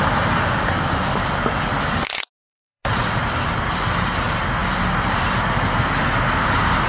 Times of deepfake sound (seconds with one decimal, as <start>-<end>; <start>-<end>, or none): 2.5-3.2